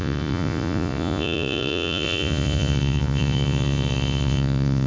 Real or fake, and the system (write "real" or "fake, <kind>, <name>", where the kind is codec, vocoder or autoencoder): fake, vocoder, Vocos